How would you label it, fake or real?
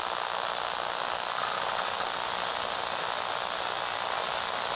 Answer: real